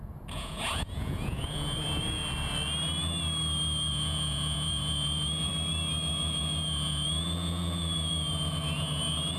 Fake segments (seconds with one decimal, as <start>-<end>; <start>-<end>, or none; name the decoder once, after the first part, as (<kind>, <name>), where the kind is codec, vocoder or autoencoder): 0.0-2.2 (vocoder, Vocos); 3.9-5.5; 6.1-9.4